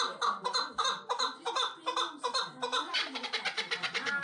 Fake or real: real